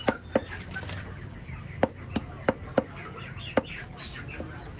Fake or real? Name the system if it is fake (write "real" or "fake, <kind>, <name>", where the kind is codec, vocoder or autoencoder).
real